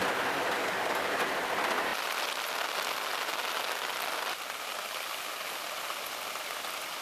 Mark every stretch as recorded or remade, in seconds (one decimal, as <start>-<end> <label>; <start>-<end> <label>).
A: 0.0-0.6 recorded; 0.6-1.2 remade; 1.2-7.0 recorded